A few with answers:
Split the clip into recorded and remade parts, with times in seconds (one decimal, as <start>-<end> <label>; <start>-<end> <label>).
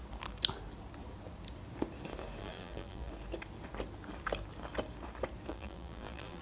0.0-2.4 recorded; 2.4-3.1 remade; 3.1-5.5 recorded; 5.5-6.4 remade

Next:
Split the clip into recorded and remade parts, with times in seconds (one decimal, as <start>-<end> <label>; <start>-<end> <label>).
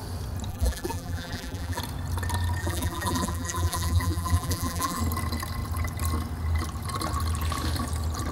0.0-0.5 recorded; 0.5-1.8 remade; 1.8-2.6 recorded; 2.6-5.0 remade; 5.0-8.3 recorded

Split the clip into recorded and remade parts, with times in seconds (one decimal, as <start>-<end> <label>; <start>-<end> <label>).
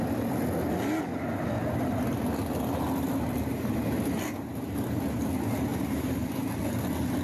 0.0-5.7 recorded; 5.7-6.5 remade; 6.5-7.2 recorded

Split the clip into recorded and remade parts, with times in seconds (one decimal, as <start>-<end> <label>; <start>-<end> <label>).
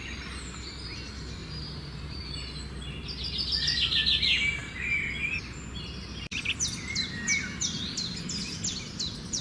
0.0-1.4 recorded; 1.4-2.2 remade; 2.2-9.4 recorded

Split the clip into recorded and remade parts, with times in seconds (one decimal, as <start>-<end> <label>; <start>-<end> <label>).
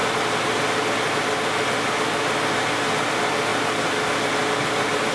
0.0-5.1 recorded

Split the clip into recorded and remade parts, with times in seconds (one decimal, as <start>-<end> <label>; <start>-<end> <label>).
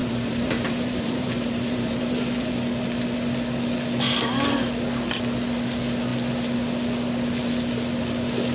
0.0-2.5 remade; 2.5-8.5 recorded